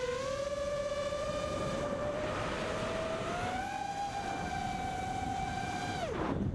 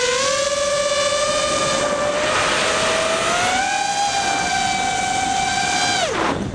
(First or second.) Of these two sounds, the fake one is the first